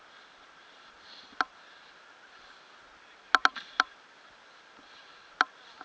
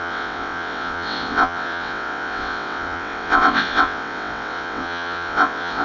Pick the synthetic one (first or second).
second